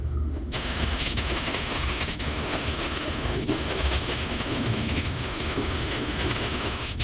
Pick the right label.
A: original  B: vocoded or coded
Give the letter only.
B